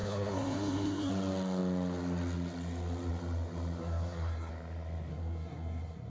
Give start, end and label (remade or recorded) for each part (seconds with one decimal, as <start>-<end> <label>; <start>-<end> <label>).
0.0-1.1 remade; 1.1-3.8 recorded; 3.8-4.5 remade; 4.5-5.1 recorded; 5.1-6.1 remade